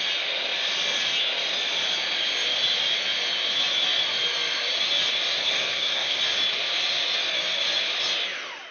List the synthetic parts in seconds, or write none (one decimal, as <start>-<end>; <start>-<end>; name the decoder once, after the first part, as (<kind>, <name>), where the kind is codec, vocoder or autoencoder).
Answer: 5.4-6.2 (codec, SNAC)